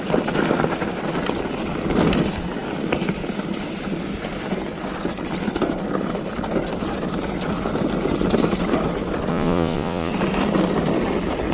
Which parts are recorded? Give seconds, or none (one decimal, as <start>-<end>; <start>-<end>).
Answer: 0.0-9.3; 10.1-11.5